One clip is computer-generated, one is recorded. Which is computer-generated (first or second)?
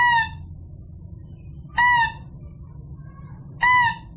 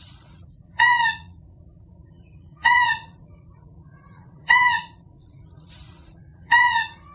second